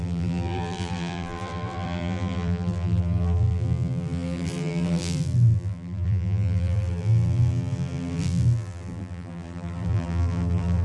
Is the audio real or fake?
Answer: fake